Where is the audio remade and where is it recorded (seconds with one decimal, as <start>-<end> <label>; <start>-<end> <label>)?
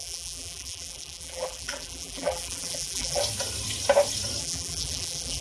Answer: 0.0-3.2 remade; 3.2-4.4 recorded; 4.4-5.4 remade